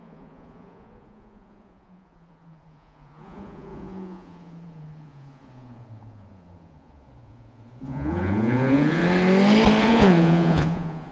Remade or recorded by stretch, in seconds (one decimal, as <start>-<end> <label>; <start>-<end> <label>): 0.0-9.0 remade; 9.0-9.8 recorded; 9.8-11.1 remade